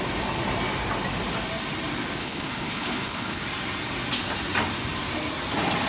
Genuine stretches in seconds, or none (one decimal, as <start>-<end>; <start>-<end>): 0.0-2.2; 3.4-5.9